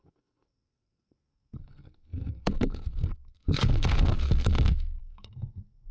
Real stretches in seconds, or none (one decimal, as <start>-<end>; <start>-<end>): none